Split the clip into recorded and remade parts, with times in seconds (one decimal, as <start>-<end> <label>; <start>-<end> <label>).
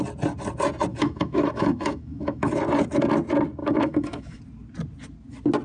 0.0-0.9 recorded; 0.9-2.5 remade; 2.5-3.6 recorded; 3.6-4.4 remade; 4.4-5.6 recorded